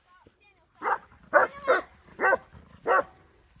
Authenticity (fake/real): real